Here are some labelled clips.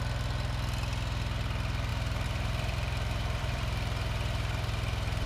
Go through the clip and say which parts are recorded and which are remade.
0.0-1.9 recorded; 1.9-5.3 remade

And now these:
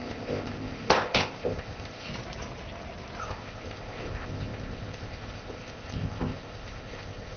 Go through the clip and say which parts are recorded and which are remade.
0.0-2.1 remade; 2.1-3.2 recorded; 3.2-7.4 remade

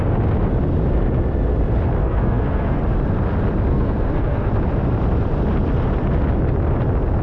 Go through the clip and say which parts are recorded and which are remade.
0.0-2.0 recorded; 2.0-2.8 remade; 2.8-3.7 recorded; 3.7-4.5 remade; 4.5-7.2 recorded

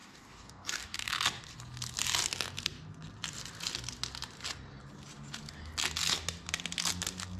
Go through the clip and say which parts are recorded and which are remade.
0.0-1.1 remade; 1.1-7.4 recorded